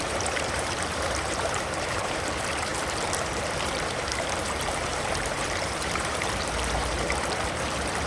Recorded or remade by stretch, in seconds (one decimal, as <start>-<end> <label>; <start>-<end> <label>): 0.0-8.1 remade